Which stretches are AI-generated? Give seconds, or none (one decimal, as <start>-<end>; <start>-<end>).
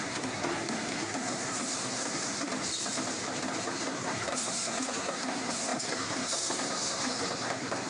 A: 0.0-2.5; 3.6-7.9